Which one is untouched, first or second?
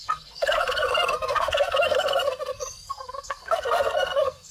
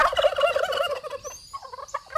second